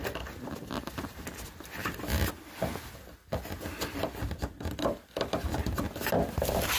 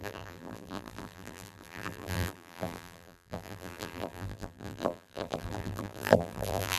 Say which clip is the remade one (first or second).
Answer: second